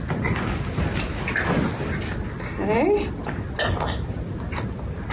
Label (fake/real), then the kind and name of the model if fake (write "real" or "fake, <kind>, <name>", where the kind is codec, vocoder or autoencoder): real